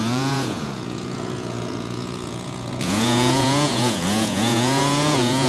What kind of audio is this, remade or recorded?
remade